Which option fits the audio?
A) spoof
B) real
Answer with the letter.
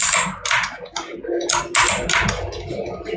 B